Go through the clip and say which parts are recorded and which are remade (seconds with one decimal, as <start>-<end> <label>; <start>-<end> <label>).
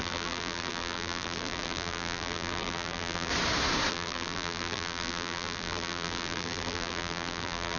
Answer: 0.0-3.3 remade; 3.3-3.9 recorded; 3.9-7.8 remade